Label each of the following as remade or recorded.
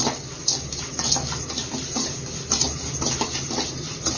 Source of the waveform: recorded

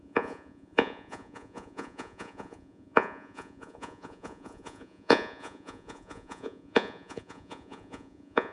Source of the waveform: remade